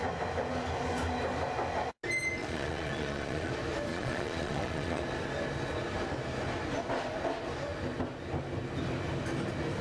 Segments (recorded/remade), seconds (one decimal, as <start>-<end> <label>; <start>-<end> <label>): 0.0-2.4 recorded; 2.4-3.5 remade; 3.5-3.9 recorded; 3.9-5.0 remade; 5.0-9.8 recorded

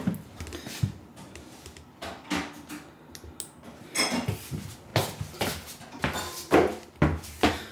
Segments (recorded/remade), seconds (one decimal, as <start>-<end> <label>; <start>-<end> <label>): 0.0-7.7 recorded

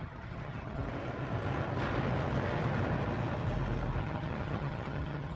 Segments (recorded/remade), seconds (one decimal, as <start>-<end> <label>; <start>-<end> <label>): 0.0-0.8 remade; 0.8-4.0 recorded; 4.0-5.4 remade

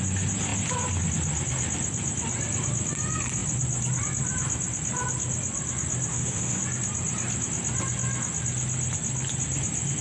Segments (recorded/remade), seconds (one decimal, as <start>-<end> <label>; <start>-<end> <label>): 0.0-6.1 recorded; 6.1-6.6 remade; 6.6-10.0 recorded

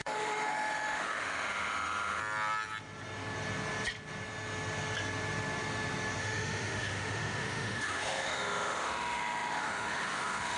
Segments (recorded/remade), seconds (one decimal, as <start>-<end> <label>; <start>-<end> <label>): 0.0-2.2 remade; 2.2-6.2 recorded; 6.2-10.6 remade